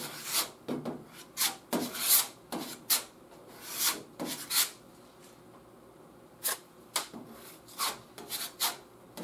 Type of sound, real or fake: real